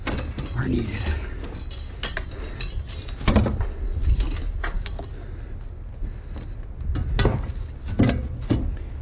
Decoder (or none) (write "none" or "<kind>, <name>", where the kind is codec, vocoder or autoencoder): none